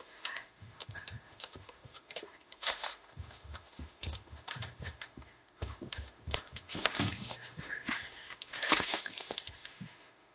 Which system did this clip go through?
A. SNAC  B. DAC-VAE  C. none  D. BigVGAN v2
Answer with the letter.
B